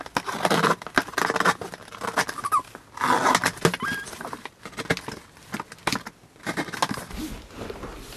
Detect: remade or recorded recorded